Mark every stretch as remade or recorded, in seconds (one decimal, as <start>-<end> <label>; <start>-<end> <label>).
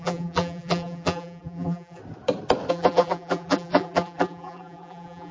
0.0-2.0 remade; 2.0-2.7 recorded; 2.7-5.3 remade